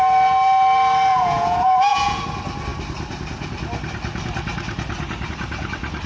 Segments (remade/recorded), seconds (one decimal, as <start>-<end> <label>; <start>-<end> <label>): 0.0-1.1 recorded; 1.1-2.2 remade; 2.2-6.1 recorded